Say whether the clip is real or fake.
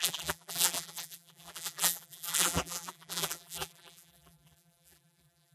fake